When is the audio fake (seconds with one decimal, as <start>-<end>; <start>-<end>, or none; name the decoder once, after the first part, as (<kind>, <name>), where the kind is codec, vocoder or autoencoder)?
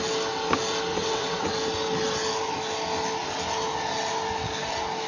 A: 0.9-1.5 (vocoder, WaveNeXt)